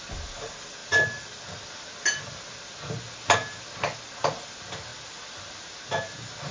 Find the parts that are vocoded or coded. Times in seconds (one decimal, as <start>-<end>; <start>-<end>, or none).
none